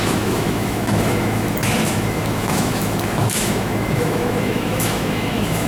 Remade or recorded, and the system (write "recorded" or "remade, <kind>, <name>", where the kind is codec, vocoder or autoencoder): remade, autoencoder, DAC-VAE